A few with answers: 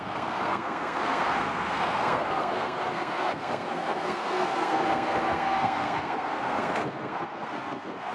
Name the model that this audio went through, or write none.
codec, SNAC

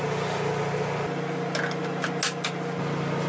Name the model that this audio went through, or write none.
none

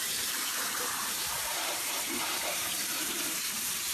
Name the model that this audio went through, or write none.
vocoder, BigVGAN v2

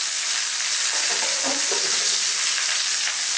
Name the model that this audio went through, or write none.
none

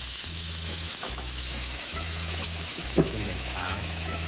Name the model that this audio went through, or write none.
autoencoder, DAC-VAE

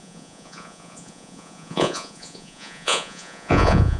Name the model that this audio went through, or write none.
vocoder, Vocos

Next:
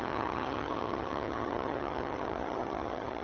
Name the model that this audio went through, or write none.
vocoder, HiFi-GAN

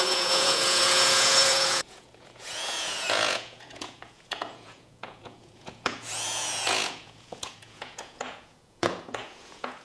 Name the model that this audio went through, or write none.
vocoder, Vocos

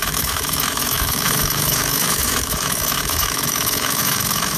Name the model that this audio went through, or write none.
autoencoder, DAC-VAE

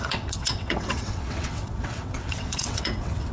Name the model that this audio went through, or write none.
vocoder, WaveNeXt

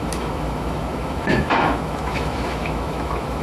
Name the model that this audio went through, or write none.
autoencoder, DAC-VAE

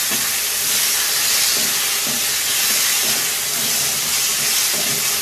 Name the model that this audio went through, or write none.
none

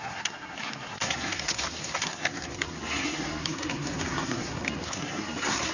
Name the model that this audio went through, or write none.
codec, SNAC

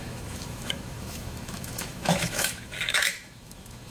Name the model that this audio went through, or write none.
autoencoder, DAC-VAE